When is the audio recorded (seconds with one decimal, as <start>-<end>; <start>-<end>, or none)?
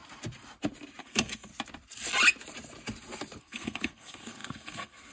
0.0-1.0; 1.5-3.4